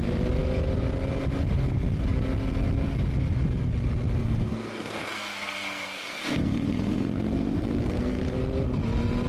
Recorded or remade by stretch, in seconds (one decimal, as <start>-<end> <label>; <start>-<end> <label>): 0.0-4.2 recorded; 4.2-8.2 remade; 8.2-9.3 recorded